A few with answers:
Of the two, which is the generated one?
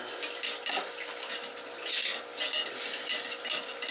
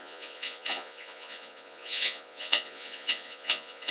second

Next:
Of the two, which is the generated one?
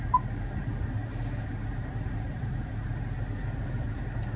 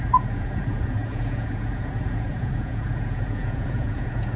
second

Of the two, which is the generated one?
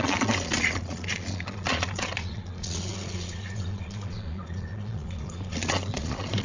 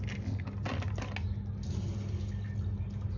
first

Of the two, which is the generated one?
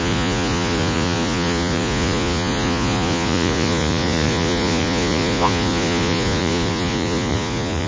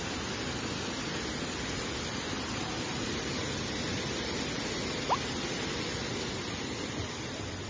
first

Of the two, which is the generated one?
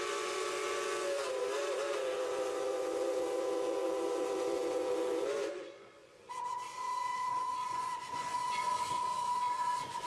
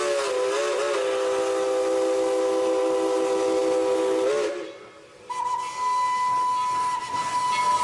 first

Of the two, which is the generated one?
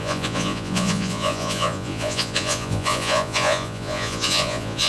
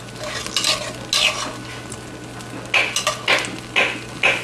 first